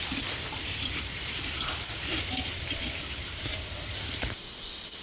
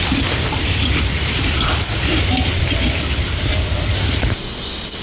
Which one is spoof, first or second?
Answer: first